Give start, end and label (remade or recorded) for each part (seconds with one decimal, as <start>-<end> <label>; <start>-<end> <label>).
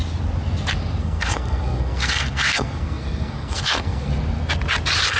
0.0-1.0 recorded; 1.0-4.1 remade; 4.1-5.2 recorded